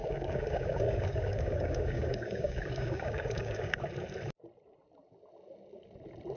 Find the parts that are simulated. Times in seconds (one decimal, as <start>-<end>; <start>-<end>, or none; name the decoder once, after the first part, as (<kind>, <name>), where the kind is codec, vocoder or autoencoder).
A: 0.0-3.8 (codec, DAC)